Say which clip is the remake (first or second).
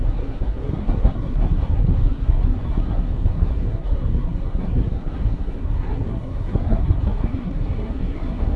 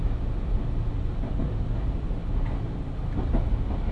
first